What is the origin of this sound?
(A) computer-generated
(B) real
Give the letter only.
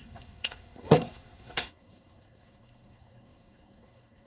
A